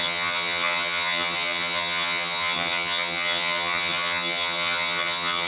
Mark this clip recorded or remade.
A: remade